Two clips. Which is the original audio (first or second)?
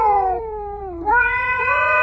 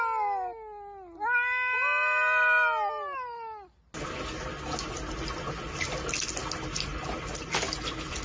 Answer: second